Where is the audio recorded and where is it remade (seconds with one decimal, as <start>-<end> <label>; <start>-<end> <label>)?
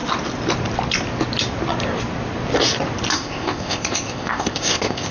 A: 0.0-3.1 recorded; 3.1-5.1 remade